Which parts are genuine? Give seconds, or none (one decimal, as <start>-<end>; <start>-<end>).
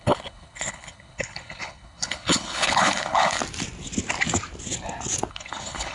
3.4-5.3